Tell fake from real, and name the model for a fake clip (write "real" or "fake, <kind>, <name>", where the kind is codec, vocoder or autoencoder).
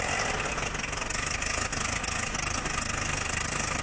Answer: real